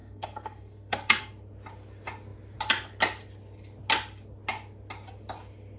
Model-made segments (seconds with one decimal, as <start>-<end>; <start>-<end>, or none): 0.0-1.3